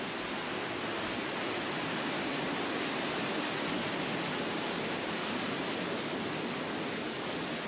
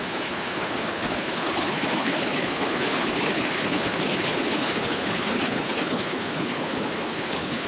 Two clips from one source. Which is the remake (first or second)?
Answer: second